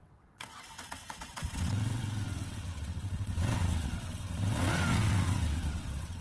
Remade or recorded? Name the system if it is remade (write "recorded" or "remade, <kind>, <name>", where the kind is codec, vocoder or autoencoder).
remade, vocoder, WaveNeXt